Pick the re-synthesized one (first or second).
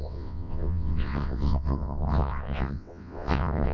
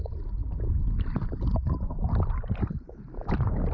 first